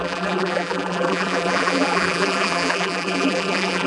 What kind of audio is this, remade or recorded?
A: remade